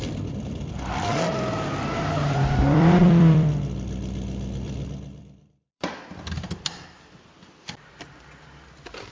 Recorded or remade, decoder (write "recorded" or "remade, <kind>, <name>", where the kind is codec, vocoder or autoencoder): remade, vocoder, BigVGAN v2